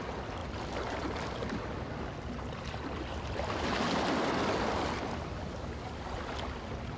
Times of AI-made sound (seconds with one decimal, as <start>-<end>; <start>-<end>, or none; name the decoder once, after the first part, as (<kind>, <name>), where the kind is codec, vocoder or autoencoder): none